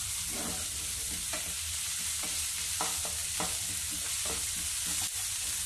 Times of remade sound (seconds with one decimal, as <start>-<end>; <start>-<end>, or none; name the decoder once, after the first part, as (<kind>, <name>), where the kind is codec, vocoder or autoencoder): none